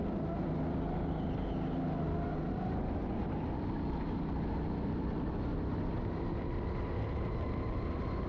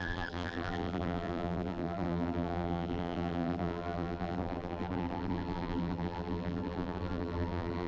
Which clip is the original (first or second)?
first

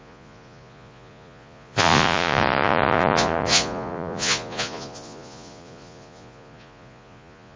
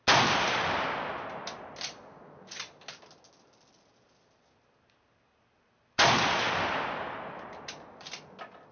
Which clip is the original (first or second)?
second